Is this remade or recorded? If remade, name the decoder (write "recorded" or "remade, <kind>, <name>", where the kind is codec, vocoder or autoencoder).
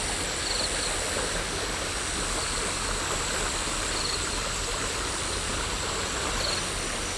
recorded